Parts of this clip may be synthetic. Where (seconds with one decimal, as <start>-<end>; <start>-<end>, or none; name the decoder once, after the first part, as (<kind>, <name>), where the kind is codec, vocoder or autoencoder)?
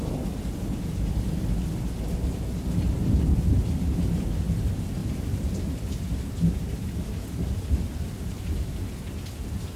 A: 5.0-8.8 (vocoder, BigVGAN v2)